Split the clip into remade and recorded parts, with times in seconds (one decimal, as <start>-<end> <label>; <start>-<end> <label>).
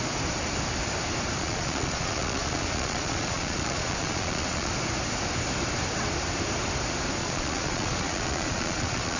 0.0-1.4 recorded; 1.4-4.7 remade; 4.7-7.2 recorded; 7.2-9.2 remade